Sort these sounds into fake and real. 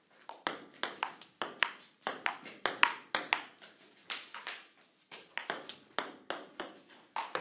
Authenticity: real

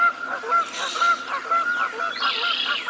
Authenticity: real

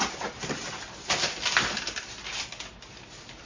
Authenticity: real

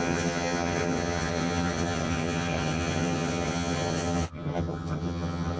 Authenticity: fake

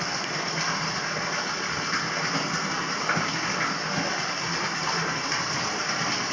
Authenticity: real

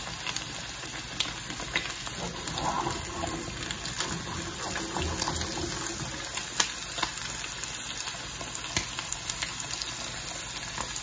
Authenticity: real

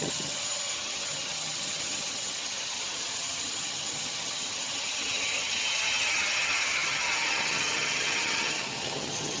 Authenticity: fake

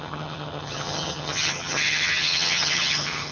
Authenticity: fake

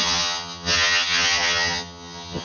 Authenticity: fake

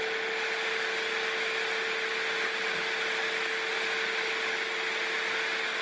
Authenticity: real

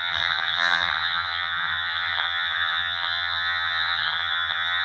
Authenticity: fake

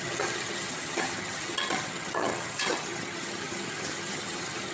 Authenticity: fake